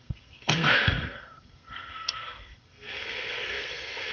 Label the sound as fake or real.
fake